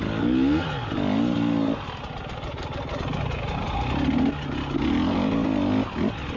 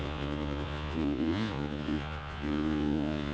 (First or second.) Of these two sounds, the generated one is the second